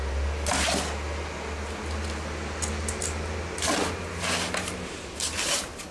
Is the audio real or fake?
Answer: real